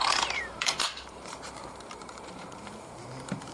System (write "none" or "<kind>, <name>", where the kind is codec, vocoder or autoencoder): vocoder, BigVGAN v2